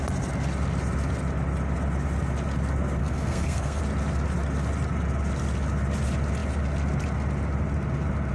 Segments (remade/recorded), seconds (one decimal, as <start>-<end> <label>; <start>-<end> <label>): 0.0-3.0 recorded; 3.0-3.8 remade; 3.8-8.3 recorded